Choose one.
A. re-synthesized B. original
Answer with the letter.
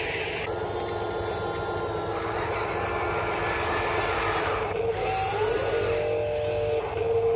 B